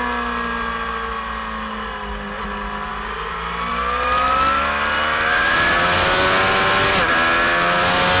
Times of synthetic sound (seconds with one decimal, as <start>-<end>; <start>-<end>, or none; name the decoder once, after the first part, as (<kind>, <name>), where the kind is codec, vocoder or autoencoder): none